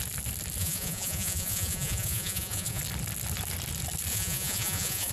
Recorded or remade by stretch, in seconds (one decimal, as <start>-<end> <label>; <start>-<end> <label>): 0.0-0.6 recorded; 0.6-2.8 remade; 2.8-4.1 recorded; 4.1-5.1 remade